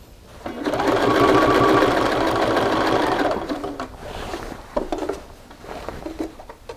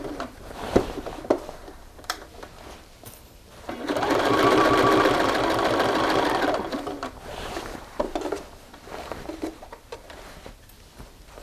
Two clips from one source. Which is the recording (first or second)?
first